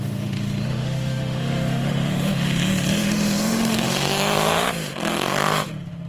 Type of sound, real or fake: fake